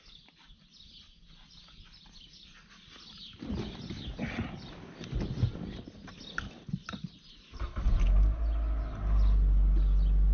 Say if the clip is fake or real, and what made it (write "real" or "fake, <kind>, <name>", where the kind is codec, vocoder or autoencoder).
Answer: real